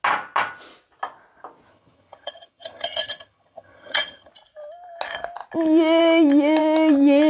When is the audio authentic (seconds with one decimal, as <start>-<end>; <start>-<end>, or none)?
0.0-1.7; 4.3-7.3